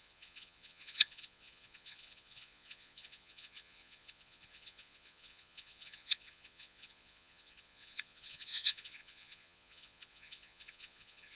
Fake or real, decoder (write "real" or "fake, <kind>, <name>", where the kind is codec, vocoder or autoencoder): fake, vocoder, Vocos